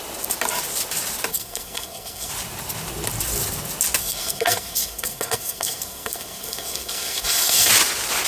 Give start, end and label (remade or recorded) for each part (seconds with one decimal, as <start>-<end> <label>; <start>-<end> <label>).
0.0-1.3 recorded; 1.3-2.3 remade; 2.3-4.0 recorded; 4.0-7.7 remade; 7.7-8.3 recorded